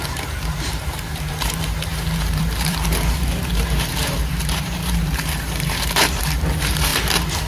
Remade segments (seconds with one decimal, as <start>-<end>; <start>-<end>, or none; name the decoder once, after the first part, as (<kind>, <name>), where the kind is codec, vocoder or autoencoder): 0.0-6.9 (vocoder, BigVGAN v2)